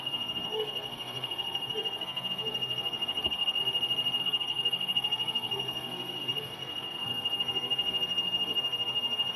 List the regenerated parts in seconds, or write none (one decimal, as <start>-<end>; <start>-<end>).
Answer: 0.0-3.6; 4.2-9.4